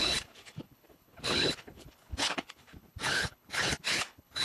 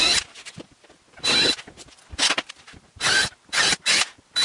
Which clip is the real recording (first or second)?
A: second